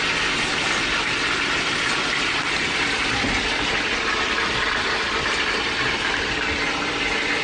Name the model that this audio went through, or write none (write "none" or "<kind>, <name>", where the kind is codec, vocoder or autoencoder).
vocoder, BigVGAN v2